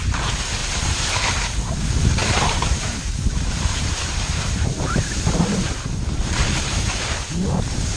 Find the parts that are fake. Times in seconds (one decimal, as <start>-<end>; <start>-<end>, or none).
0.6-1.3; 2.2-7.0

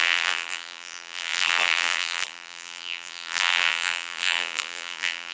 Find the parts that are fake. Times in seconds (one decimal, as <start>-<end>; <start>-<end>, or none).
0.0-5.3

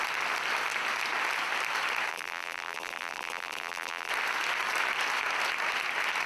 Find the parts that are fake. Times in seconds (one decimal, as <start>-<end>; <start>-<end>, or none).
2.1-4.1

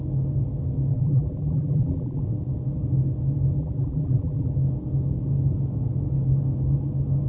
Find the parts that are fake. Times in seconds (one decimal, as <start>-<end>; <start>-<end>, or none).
0.9-2.2; 3.6-4.5